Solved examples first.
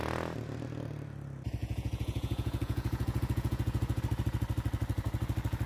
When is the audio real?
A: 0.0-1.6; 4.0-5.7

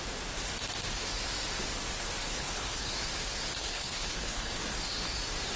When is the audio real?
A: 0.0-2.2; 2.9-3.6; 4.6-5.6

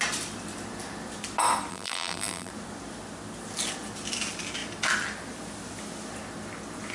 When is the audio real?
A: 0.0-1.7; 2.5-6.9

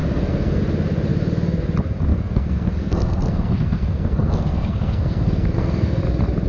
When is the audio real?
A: 0.6-2.1; 6.0-6.5